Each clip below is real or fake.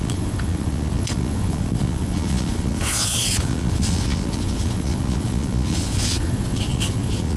fake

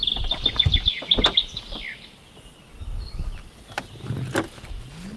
real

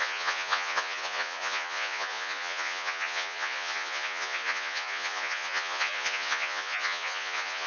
fake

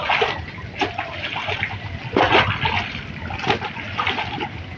real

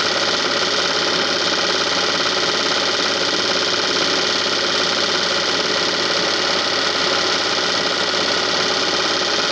real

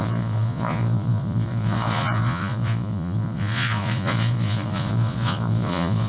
fake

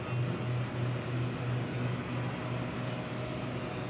real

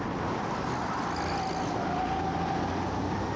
real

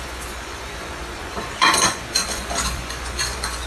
fake